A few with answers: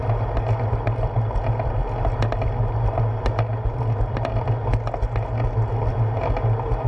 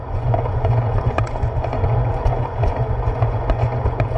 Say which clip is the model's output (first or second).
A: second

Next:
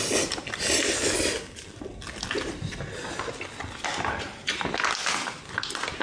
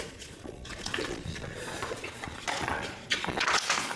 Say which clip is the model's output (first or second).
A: second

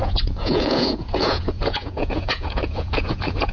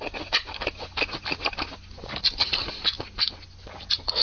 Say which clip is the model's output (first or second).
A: first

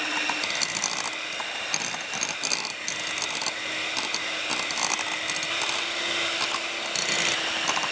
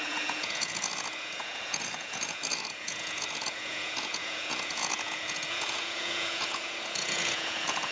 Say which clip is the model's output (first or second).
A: second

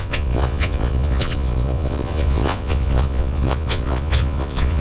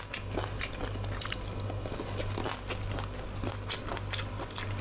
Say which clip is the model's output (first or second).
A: first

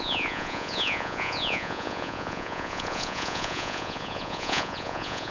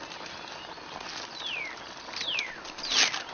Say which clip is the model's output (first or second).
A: first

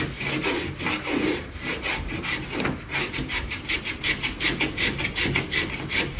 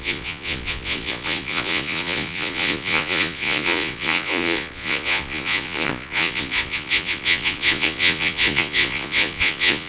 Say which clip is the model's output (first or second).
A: second